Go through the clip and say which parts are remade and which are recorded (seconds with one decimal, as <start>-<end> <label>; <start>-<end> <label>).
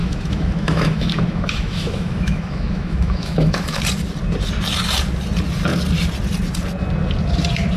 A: 0.0-3.8 remade; 3.8-7.8 recorded